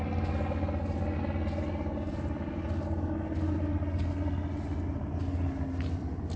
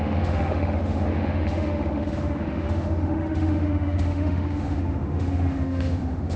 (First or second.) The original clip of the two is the first